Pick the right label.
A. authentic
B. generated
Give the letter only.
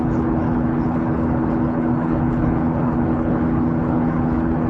B